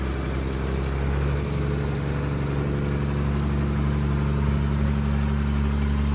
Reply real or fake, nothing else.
real